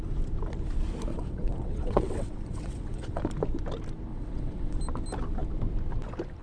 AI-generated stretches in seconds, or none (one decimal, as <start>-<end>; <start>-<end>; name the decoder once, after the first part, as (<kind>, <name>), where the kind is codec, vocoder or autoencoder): 1.1-3.2 (vocoder, WaveNeXt); 4.1-4.8